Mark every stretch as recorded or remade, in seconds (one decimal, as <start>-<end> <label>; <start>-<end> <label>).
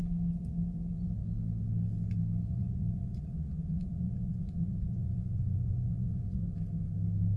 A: 0.0-2.5 recorded; 2.5-6.4 remade; 6.4-7.4 recorded